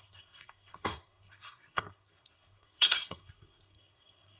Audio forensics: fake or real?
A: fake